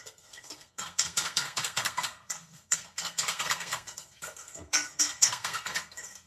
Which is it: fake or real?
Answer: fake